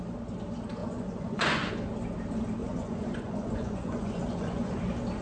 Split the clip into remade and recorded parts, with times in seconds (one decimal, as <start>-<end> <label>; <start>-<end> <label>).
0.0-0.8 recorded; 0.8-1.7 remade; 1.7-2.6 recorded; 2.6-4.8 remade; 4.8-5.2 recorded

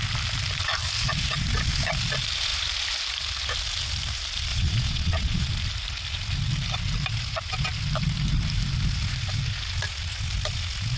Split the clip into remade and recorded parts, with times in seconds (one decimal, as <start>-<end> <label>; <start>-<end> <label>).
0.0-4.5 recorded; 4.5-5.5 remade; 5.5-11.0 recorded

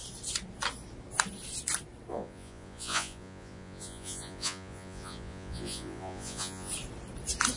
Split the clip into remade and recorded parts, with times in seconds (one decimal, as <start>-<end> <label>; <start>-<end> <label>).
0.0-2.1 recorded; 2.1-6.7 remade; 6.7-7.6 recorded

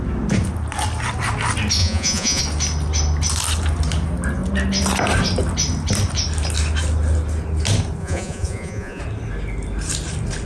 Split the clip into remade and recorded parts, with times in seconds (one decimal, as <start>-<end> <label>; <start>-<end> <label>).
0.0-1.8 recorded; 1.8-2.4 remade; 2.4-8.0 recorded; 8.0-9.0 remade; 9.0-10.5 recorded

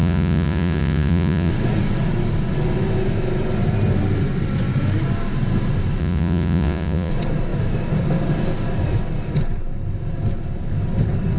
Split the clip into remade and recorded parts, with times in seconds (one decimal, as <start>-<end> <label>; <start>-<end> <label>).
0.0-1.5 remade; 1.5-6.0 recorded; 6.0-7.1 remade; 7.1-11.4 recorded

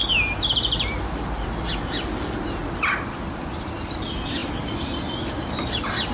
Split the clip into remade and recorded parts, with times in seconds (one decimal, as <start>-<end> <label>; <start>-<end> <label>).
0.0-6.1 recorded

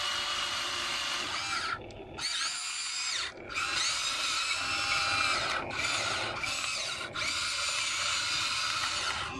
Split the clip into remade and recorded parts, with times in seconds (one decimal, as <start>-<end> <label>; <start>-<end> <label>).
0.0-9.4 recorded